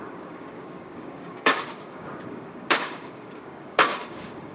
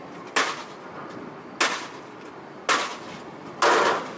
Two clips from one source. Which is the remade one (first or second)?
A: first